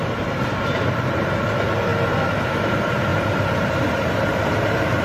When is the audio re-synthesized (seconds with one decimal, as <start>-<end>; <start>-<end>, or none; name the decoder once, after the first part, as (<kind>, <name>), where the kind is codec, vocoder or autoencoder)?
0.0-1.9 (vocoder, BigVGAN v2); 2.5-5.0